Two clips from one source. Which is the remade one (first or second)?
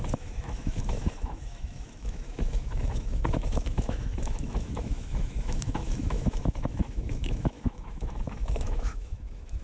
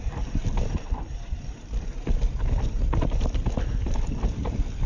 first